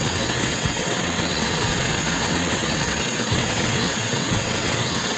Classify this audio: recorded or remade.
remade